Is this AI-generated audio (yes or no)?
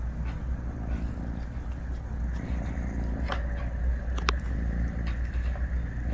no